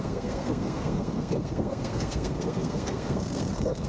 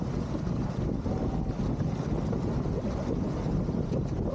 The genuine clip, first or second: second